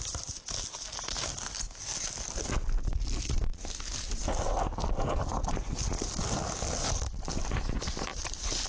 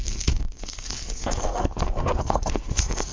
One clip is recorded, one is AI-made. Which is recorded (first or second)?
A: first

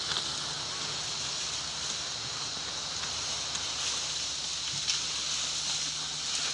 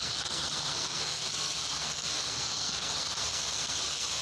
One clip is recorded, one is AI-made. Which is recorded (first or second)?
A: first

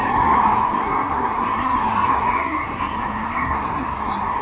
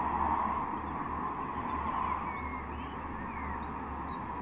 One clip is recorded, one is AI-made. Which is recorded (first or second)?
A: second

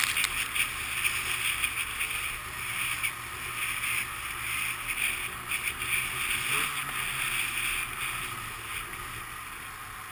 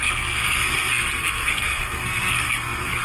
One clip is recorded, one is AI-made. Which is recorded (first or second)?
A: first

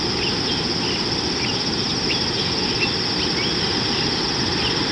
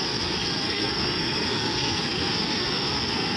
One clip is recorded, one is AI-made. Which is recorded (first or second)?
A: first